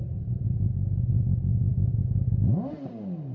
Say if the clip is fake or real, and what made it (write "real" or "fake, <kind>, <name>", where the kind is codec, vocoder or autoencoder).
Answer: real